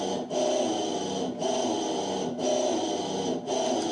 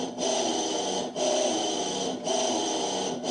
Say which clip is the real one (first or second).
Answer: first